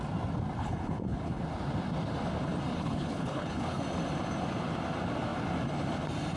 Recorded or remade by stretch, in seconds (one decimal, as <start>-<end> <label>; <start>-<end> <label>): 0.0-0.6 recorded; 0.6-1.4 remade; 1.4-2.7 recorded; 2.7-3.8 remade; 3.8-6.4 recorded